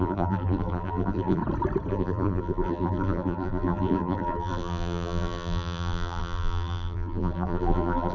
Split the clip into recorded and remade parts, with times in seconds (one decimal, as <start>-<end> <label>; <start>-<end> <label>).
0.0-1.4 remade; 1.4-1.9 recorded; 1.9-8.1 remade